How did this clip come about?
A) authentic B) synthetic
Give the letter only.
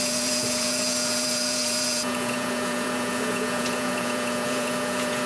B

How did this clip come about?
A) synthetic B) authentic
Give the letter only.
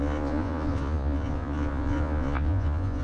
A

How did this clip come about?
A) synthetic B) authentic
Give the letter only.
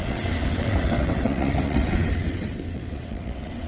A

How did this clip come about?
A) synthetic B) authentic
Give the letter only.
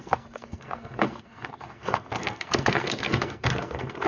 A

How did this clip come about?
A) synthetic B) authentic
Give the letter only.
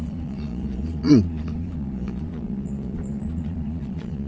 A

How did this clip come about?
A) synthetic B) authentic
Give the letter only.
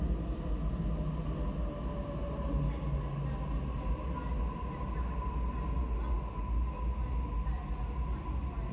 B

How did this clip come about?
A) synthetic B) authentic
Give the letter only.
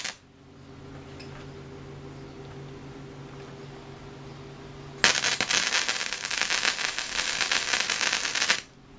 B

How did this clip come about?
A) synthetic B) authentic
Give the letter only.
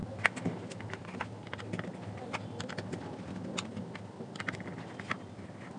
B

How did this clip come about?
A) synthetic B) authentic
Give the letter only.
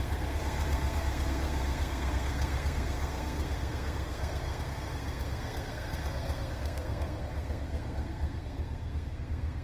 A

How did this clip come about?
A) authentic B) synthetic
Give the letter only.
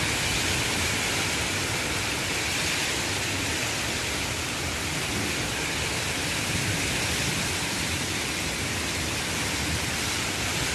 B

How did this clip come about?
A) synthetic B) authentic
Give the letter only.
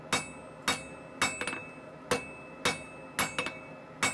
B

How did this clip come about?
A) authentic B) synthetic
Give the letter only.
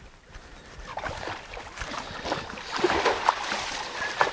A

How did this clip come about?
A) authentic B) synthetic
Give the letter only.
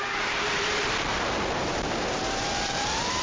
B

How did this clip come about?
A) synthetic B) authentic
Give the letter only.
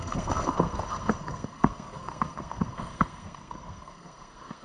A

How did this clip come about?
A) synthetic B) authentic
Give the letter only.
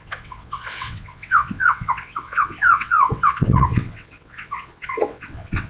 A